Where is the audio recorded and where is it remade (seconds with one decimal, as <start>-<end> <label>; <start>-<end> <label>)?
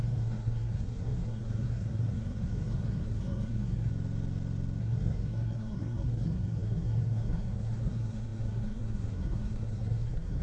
0.0-3.9 remade; 3.9-4.8 recorded; 4.8-10.4 remade